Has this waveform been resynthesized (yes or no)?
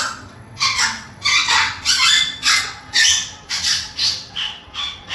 yes